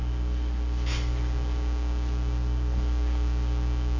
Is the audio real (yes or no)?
yes